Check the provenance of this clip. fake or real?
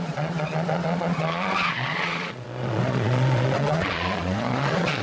fake